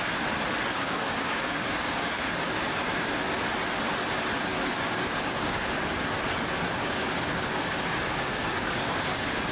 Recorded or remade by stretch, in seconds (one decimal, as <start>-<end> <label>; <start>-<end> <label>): 0.0-0.7 recorded; 0.7-2.4 remade; 2.4-4.5 recorded; 4.5-5.8 remade; 5.8-6.8 recorded; 6.8-9.5 remade